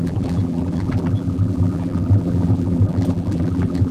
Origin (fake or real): fake